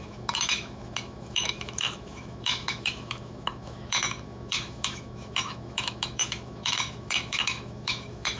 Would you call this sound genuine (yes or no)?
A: no